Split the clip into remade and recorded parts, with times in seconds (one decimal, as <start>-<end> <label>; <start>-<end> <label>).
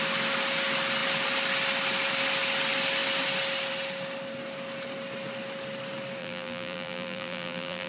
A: 0.0-6.2 recorded; 6.2-7.9 remade